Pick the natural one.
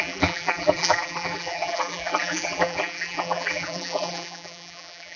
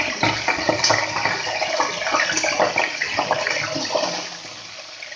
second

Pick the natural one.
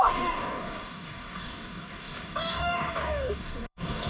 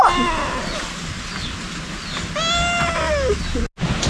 second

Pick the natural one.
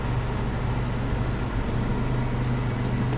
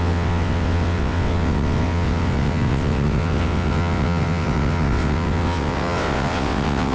first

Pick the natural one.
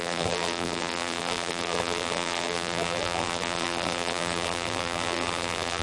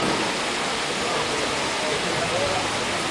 second